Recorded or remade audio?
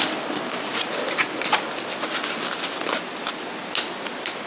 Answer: recorded